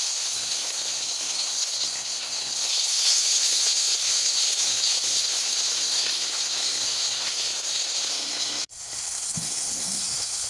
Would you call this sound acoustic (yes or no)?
no